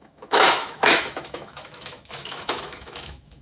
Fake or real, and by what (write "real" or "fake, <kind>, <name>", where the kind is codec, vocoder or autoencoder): fake, autoencoder, DAC-VAE